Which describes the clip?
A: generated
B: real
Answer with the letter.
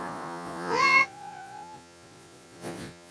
A